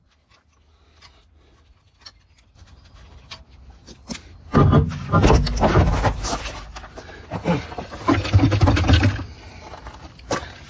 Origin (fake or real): real